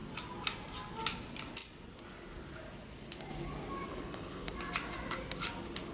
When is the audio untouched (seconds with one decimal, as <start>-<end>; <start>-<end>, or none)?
0.0-3.9; 4.5-5.9